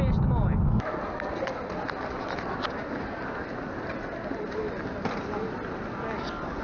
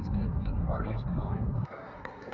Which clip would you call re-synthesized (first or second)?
second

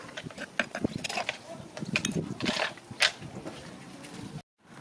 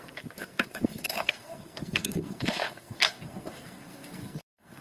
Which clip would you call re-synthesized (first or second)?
second